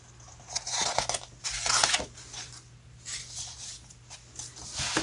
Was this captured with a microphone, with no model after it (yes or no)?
yes